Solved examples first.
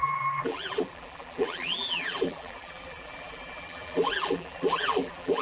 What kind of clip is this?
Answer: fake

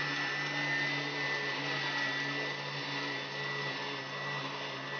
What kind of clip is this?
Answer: real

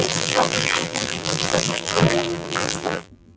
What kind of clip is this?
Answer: fake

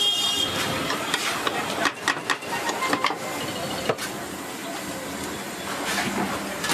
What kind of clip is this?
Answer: real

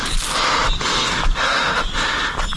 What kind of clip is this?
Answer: real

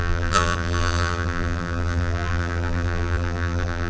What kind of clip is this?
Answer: fake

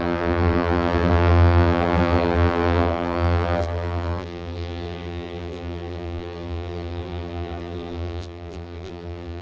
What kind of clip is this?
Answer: fake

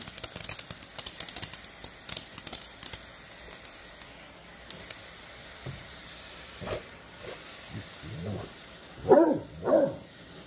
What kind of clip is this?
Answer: real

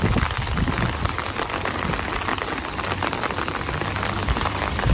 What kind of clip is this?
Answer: real